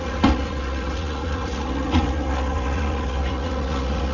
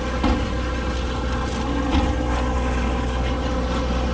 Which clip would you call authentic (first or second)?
second